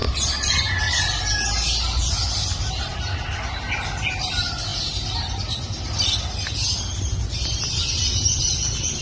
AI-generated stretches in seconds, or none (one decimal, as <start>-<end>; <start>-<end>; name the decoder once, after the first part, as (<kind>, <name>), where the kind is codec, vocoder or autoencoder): none